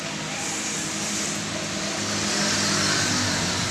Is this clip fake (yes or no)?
no